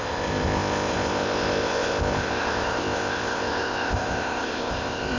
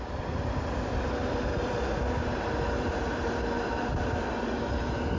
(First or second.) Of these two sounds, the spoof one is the first